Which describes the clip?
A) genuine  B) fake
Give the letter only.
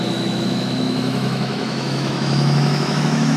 B